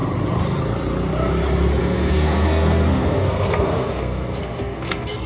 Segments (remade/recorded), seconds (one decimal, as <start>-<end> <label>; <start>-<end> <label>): 0.0-1.8 recorded; 1.8-5.3 remade